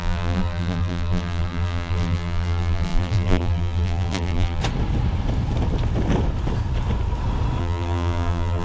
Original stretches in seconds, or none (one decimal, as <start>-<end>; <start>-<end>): 4.6-7.6